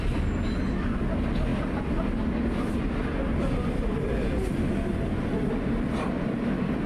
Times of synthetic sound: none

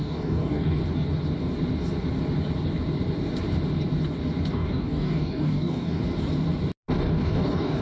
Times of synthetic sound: 0.0-0.8 (codec, DAC); 4.5-6.0; 7.1-7.8

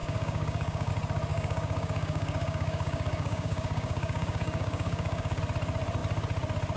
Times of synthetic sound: 0.0-0.9 (codec, DAC); 1.3-5.4

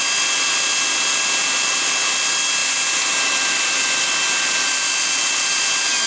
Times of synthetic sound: none